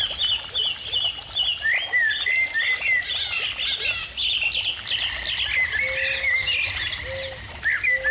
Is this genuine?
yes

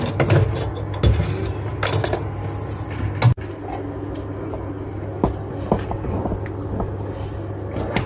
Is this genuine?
yes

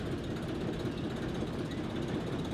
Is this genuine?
yes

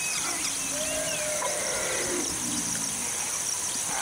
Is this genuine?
no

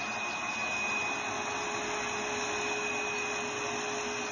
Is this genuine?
yes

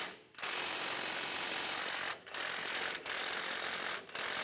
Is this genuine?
yes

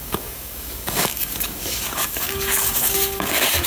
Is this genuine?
no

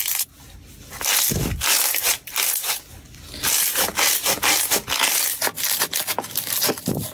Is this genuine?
yes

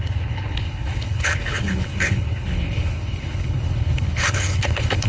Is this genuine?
no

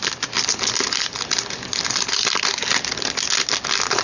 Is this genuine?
yes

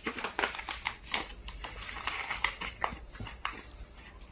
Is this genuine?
yes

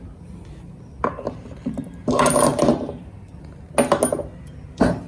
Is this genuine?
yes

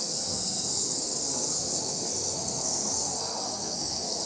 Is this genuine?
no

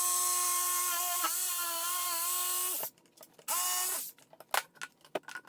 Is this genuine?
yes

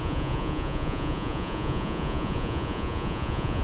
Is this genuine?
no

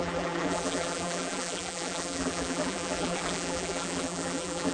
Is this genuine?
no